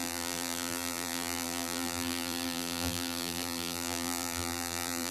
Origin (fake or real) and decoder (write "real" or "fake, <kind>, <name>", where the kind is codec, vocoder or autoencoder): fake, vocoder, BigVGAN v2